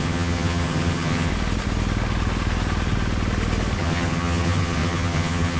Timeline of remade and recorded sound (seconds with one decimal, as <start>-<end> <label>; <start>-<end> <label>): 0.0-1.3 remade; 1.3-3.8 recorded; 3.8-5.6 remade